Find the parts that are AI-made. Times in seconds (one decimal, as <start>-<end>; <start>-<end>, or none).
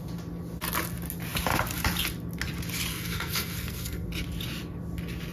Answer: 2.9-4.1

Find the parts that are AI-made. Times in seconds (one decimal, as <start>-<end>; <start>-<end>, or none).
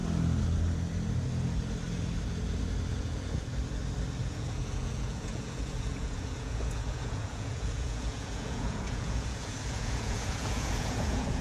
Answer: 2.9-3.5; 4.2-11.4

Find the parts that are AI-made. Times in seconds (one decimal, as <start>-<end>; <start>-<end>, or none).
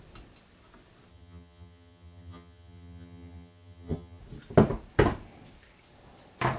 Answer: 1.1-4.2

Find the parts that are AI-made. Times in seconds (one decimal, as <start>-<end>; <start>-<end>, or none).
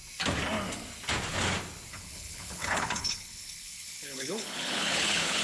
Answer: 1.9-5.4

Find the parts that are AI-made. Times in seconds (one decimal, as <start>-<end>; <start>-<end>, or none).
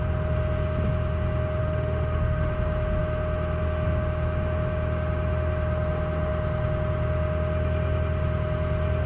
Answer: 1.6-2.5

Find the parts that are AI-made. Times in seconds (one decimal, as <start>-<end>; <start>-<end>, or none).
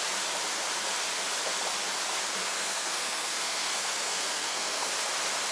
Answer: 2.4-4.9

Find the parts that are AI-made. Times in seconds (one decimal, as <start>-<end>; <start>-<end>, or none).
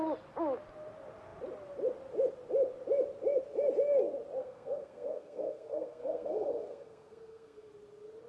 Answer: 4.4-7.7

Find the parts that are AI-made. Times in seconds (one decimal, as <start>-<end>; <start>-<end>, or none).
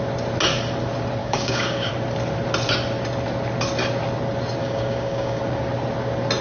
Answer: 1.2-1.9; 4.6-5.4